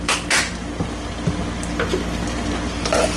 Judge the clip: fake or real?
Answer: real